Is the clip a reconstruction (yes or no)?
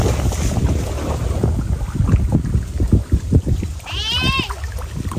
no